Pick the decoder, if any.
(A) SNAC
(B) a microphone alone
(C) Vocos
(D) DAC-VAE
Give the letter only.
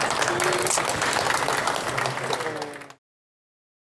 B